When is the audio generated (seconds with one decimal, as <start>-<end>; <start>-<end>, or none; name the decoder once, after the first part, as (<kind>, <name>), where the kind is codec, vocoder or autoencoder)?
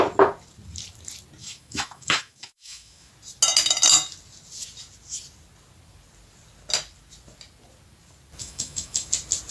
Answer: 1.4-3.1 (autoencoder, DAC-VAE); 8.4-9.1